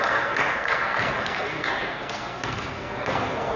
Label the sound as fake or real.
fake